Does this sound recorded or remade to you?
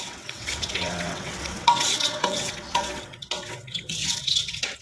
remade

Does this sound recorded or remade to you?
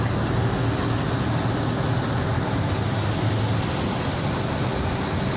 recorded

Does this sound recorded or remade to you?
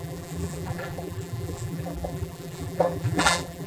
remade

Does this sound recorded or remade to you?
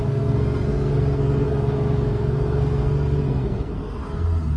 remade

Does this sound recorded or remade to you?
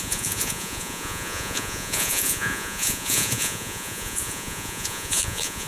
remade